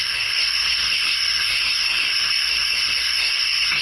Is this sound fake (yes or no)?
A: yes